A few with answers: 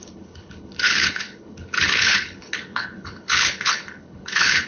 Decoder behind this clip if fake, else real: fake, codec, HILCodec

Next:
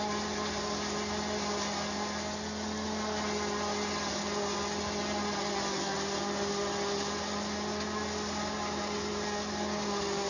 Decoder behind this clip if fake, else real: real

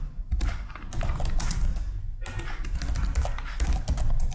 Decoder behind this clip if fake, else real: real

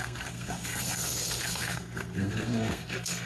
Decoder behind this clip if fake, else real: fake, codec, SNAC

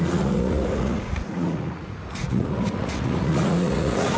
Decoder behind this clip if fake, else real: fake, vocoder, Vocos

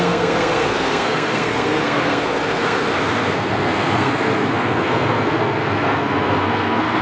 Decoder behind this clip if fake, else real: fake, codec, SNAC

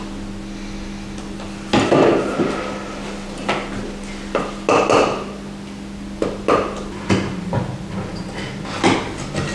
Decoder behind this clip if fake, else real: real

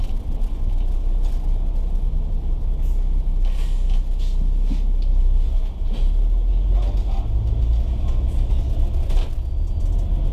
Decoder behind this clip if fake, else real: real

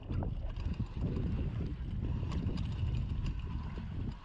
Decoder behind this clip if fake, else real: real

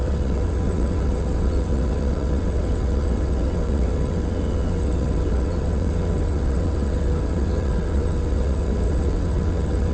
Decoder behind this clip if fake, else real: fake, vocoder, WaveNeXt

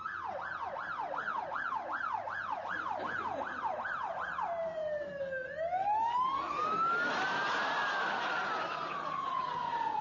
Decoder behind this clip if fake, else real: real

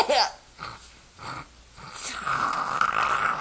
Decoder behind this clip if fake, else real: real